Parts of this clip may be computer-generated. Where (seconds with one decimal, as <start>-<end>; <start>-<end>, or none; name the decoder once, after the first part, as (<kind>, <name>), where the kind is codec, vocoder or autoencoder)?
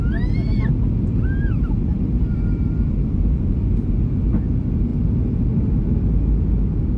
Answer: 1.9-3.9 (vocoder, BigVGAN v2); 4.9-5.6